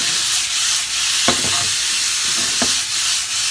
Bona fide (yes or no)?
yes